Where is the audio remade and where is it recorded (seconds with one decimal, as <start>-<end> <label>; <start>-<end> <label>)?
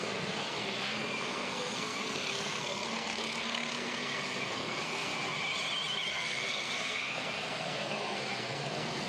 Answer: 0.0-5.1 remade; 5.1-6.1 recorded; 6.1-9.1 remade